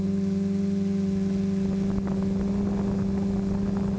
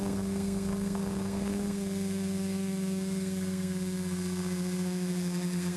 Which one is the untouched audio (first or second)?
first